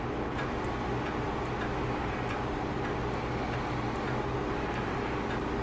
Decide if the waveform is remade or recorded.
recorded